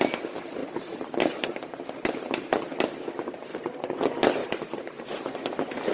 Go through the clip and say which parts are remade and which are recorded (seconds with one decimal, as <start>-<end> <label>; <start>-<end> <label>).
0.0-0.6 recorded; 0.6-2.9 remade; 2.9-3.5 recorded; 3.5-4.0 remade; 4.0-4.4 recorded; 4.4-5.0 remade; 5.0-5.9 recorded